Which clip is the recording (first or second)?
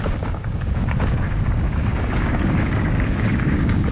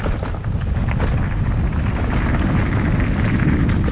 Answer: second